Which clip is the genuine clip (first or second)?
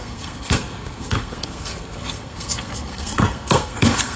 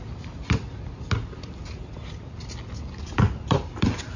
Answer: second